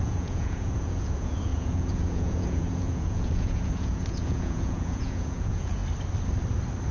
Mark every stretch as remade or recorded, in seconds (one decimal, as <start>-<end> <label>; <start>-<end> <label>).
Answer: 0.0-5.8 remade; 5.8-6.9 recorded